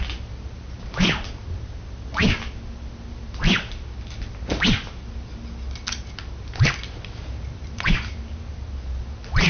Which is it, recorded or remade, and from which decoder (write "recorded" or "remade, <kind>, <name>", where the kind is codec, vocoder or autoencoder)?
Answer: recorded